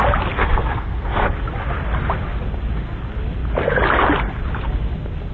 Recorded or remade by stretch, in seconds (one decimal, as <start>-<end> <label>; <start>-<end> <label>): 0.0-0.4 recorded; 0.4-1.3 remade; 1.3-5.3 recorded